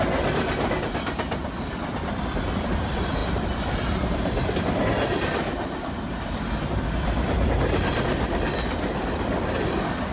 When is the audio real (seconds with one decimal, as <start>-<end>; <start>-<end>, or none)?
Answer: 0.0-10.1